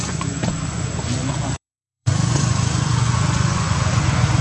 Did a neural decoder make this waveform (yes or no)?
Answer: yes